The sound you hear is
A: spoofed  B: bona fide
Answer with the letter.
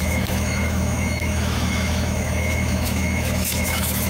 A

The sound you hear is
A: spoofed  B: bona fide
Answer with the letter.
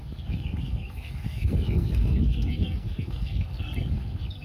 A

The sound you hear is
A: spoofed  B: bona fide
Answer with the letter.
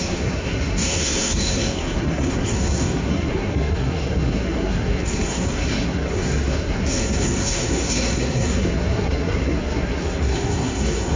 A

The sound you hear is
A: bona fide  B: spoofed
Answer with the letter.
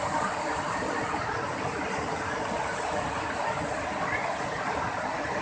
A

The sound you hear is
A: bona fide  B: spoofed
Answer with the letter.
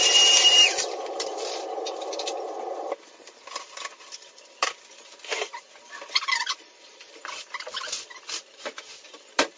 B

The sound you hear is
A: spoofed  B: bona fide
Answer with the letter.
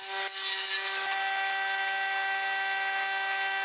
B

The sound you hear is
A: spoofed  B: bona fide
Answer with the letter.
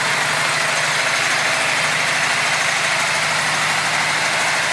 B